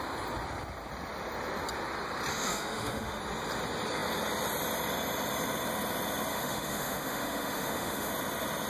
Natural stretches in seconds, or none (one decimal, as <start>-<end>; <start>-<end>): 0.0-2.3; 3.2-6.3; 8.1-8.7